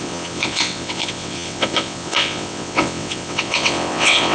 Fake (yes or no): yes